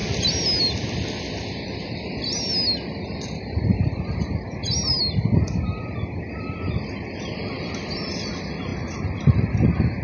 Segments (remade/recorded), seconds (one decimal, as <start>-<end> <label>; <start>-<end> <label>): 0.0-10.0 recorded